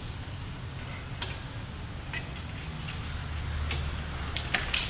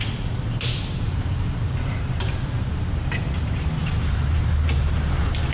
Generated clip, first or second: second